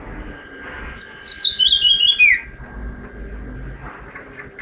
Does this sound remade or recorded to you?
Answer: recorded